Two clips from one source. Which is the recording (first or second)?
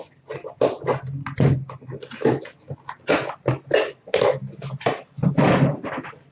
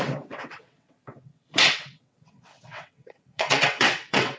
first